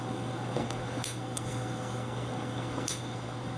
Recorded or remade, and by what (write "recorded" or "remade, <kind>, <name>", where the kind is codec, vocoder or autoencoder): remade, codec, SNAC